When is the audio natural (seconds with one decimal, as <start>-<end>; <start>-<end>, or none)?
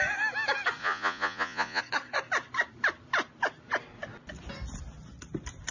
0.0-0.8; 1.8-5.7